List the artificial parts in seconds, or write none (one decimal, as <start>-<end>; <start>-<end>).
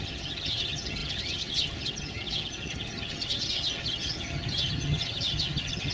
0.0-5.9